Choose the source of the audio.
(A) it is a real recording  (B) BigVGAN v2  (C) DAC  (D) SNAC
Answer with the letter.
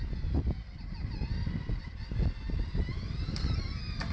A